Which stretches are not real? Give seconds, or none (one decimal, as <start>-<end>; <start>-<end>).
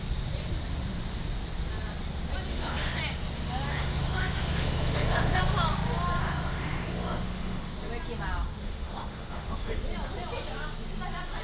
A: 2.5-3.0; 3.7-5.4; 6.2-7.7; 8.6-9.8